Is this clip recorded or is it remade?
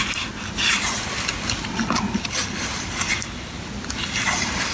recorded